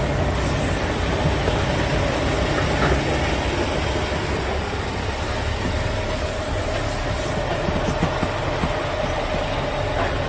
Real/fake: real